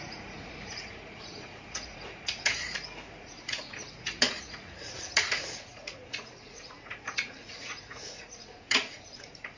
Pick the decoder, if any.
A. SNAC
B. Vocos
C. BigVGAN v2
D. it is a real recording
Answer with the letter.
B